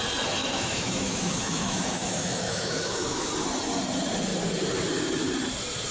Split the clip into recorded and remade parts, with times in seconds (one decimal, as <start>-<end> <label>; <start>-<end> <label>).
0.0-0.4 recorded; 0.4-3.3 remade; 3.3-5.9 recorded